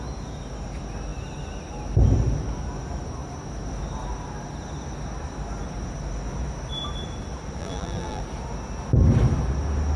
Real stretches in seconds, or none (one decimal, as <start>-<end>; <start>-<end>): 0.0-7.6; 8.2-10.0